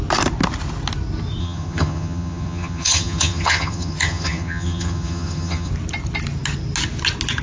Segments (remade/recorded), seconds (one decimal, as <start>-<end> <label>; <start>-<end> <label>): 0.0-1.4 recorded; 1.4-5.7 remade; 5.7-7.4 recorded